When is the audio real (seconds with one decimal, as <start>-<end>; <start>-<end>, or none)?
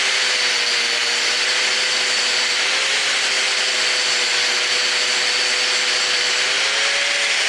0.0-7.5